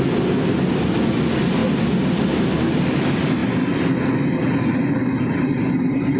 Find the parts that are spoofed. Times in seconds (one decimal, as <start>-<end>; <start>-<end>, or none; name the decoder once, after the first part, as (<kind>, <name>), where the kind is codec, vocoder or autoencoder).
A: none